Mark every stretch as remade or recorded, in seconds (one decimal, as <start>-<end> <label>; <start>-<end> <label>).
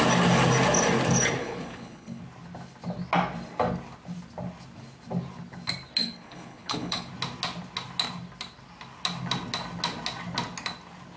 0.0-1.4 recorded; 1.4-2.2 remade; 2.2-6.0 recorded; 6.0-7.1 remade; 7.1-11.2 recorded